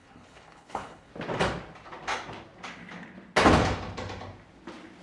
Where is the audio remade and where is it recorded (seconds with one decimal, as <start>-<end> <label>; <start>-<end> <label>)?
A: 0.0-1.1 remade; 1.1-5.0 recorded

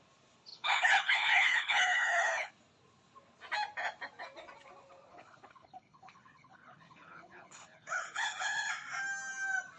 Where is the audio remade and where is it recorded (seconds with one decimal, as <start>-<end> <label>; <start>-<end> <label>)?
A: 0.0-0.5 recorded; 0.5-2.5 remade; 2.5-5.1 recorded; 5.1-8.7 remade; 8.7-9.8 recorded

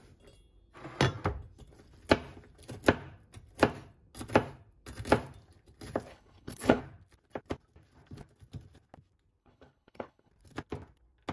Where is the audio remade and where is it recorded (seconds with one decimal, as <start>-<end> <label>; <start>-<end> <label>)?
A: 0.0-6.1 recorded; 6.1-6.8 remade; 6.8-9.4 recorded; 9.4-10.3 remade; 10.3-11.3 recorded

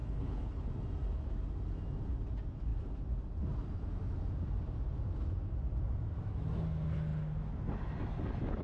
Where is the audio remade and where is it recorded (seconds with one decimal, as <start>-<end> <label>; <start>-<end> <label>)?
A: 0.0-0.7 remade; 0.7-8.6 recorded